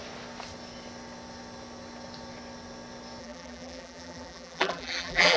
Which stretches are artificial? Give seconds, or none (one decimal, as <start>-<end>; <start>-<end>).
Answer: 3.2-5.4